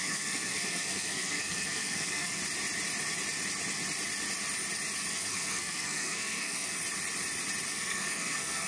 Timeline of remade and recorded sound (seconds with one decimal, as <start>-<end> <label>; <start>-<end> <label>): 0.0-2.4 remade; 2.4-5.1 recorded; 5.1-6.8 remade; 6.8-7.7 recorded; 7.7-8.7 remade